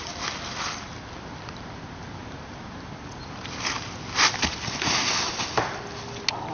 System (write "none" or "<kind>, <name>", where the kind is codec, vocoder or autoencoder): none